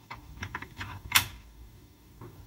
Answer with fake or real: fake